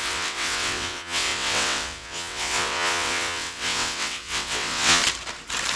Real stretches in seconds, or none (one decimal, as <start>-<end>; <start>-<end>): 5.0-5.8

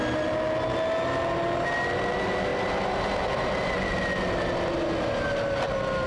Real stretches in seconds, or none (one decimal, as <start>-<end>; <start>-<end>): 0.0-6.1